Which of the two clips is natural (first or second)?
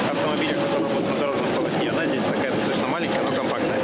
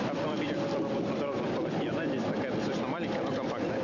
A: first